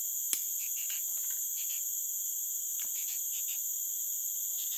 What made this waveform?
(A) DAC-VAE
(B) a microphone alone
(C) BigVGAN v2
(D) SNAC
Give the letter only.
B